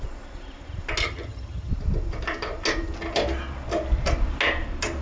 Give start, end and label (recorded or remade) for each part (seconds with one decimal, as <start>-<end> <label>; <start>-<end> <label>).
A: 0.0-1.0 recorded; 1.0-1.7 remade; 1.7-5.0 recorded